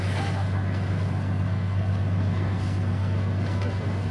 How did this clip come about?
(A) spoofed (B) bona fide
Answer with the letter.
A